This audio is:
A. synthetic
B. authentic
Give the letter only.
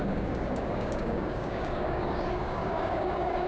A